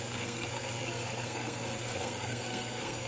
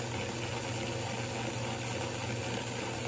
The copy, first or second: first